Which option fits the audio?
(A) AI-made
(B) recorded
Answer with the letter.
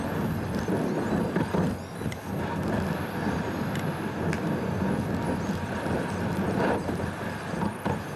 B